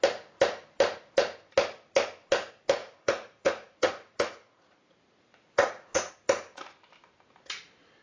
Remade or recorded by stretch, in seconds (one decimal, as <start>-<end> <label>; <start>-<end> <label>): 0.0-2.8 recorded; 2.8-6.1 remade; 6.1-8.0 recorded